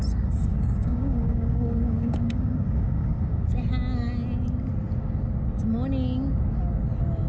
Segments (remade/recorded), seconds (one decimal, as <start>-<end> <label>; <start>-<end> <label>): 0.0-0.5 recorded; 0.5-3.4 remade; 3.4-7.3 recorded